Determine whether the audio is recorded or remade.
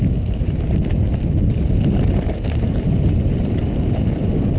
recorded